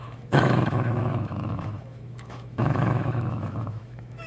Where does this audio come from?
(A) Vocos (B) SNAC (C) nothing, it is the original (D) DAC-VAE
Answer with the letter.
D